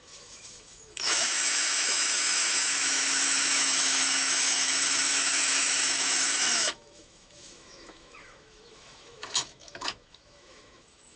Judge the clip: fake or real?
fake